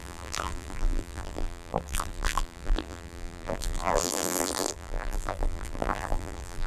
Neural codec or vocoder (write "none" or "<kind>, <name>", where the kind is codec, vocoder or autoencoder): vocoder, BigVGAN v2